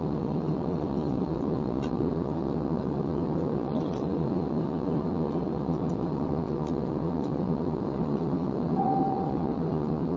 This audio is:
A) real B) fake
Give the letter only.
B